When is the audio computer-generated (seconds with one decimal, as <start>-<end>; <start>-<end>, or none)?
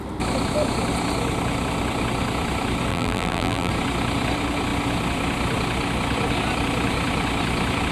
2.9-3.7